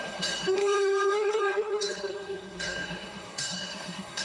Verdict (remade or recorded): remade